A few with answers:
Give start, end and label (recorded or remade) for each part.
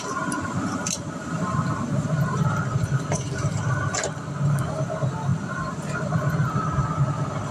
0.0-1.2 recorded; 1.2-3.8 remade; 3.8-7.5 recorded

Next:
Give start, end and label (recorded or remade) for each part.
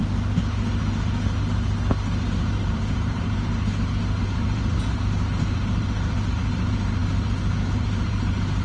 0.0-2.3 recorded; 2.3-3.5 remade; 3.5-4.2 recorded; 4.2-8.6 remade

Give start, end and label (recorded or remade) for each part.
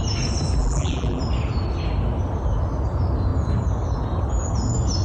0.0-0.6 recorded; 0.6-1.2 remade; 1.2-5.0 recorded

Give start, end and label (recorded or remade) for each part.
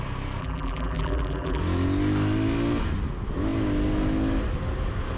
0.0-0.4 recorded; 0.4-1.6 remade; 1.6-5.2 recorded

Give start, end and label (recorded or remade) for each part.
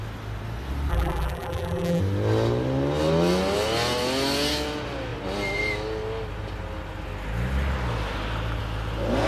0.0-0.9 recorded; 0.9-2.0 remade; 2.0-9.3 recorded